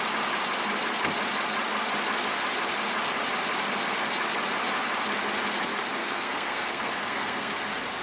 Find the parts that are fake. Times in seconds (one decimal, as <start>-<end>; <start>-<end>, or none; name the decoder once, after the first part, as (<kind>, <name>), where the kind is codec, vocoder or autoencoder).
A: 6.0-7.5 (codec, SNAC)